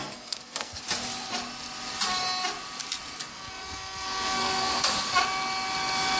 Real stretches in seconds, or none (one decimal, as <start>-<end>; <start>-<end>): 0.8-3.3; 4.8-6.2